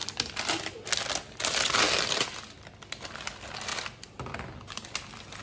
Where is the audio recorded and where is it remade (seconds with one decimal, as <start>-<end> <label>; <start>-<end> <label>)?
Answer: 0.0-5.4 recorded